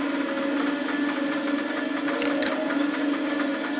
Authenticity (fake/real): real